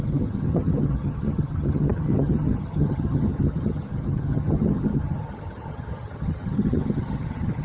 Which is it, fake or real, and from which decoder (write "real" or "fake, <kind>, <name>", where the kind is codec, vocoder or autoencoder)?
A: fake, vocoder, HiFi-GAN